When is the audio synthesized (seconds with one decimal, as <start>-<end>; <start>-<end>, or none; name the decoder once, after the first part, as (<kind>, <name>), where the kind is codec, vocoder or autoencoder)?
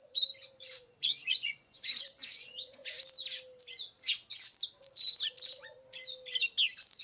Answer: 0.0-2.8 (vocoder, Vocos)